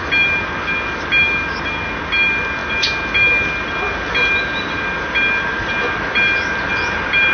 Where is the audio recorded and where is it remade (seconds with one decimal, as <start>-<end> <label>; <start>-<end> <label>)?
0.0-7.3 recorded